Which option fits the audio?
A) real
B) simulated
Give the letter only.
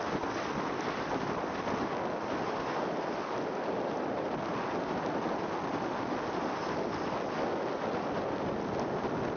A